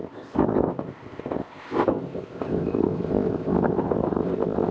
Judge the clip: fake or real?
fake